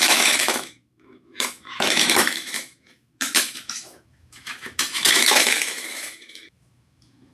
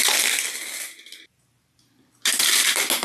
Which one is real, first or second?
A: second